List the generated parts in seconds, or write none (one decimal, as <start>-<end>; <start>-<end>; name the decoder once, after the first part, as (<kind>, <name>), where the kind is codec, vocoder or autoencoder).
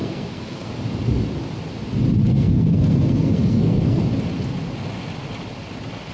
0.0-0.7 (codec, SNAC); 2.3-4.0